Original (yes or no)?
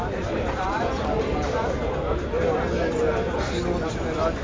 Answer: no